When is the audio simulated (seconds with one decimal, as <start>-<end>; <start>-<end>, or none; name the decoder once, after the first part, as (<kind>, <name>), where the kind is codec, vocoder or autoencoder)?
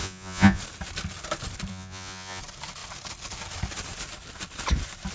0.0-0.6 (vocoder, Vocos); 1.7-2.4